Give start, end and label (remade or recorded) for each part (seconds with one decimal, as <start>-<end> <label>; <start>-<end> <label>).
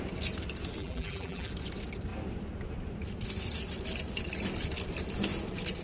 0.0-0.8 recorded; 0.8-1.5 remade; 1.5-5.8 recorded